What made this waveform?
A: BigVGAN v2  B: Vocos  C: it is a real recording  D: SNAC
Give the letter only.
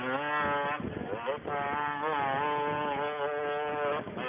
C